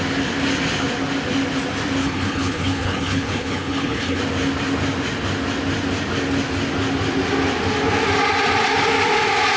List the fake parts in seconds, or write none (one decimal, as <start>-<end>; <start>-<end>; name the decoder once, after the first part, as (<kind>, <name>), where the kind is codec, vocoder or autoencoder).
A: 2.0-4.2 (codec, HILCodec)